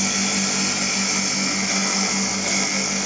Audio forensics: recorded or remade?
recorded